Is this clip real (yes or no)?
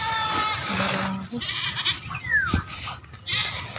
yes